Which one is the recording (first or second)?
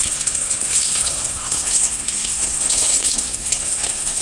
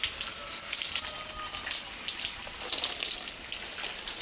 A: second